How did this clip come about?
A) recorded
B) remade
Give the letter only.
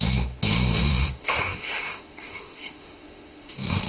B